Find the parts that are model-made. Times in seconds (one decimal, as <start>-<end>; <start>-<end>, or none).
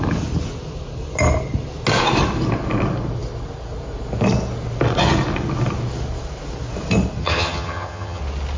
7.2-8.2